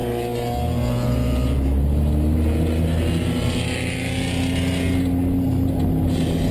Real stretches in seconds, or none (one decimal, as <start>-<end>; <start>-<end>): 0.0-6.5